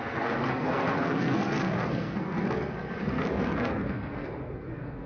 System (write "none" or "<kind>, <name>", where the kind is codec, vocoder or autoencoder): codec, SNAC